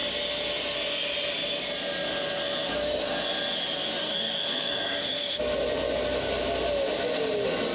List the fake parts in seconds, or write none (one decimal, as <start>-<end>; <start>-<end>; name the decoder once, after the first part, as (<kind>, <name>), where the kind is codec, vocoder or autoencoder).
4.0-5.4 (codec, SNAC)